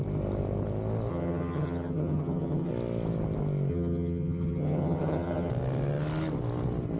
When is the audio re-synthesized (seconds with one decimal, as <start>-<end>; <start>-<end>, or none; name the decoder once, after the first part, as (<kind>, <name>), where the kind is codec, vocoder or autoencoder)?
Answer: 1.1-2.7 (vocoder, HiFi-GAN); 3.7-5.5